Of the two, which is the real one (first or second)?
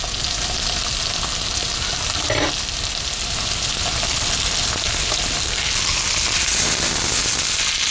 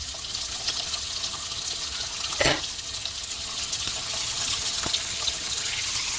first